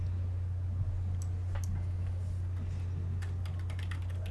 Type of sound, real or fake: real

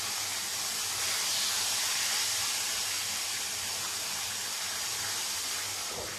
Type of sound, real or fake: real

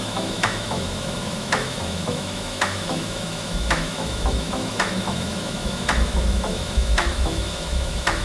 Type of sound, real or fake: fake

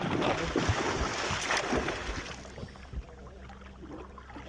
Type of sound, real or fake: real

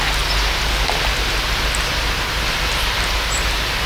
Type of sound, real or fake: real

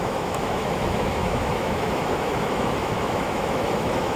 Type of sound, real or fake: fake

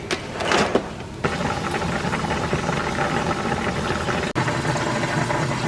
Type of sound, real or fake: real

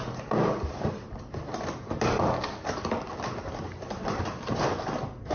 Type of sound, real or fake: real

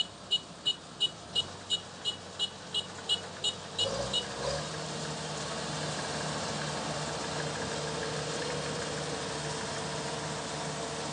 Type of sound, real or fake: real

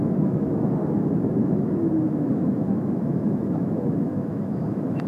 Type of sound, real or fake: fake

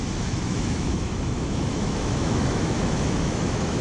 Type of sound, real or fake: fake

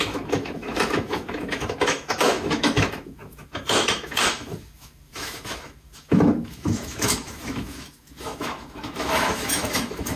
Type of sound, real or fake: fake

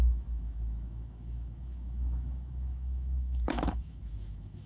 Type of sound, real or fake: fake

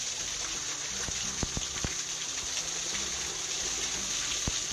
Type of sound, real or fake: real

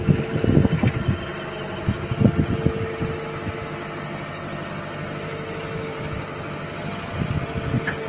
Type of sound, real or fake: real